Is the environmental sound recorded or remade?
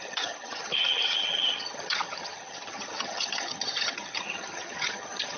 remade